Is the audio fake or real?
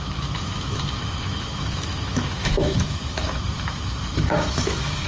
fake